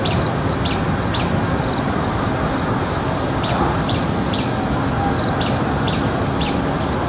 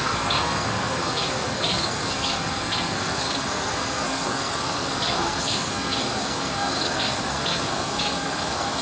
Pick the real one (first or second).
first